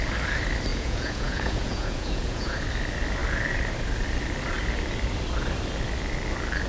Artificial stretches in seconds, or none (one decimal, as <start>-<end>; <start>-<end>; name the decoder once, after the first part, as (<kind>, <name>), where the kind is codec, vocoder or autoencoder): 0.7-2.6 (vocoder, Vocos)